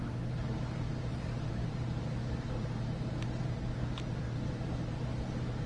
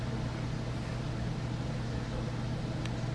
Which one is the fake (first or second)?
first